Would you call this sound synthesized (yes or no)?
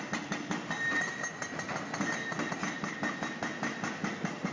no